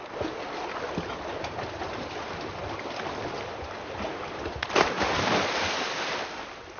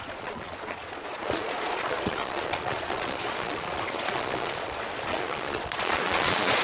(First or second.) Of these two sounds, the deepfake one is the second